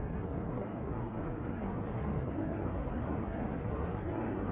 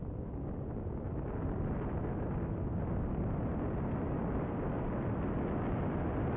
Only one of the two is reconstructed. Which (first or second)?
first